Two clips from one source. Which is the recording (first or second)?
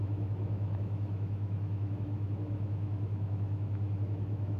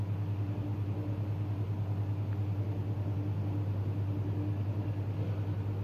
second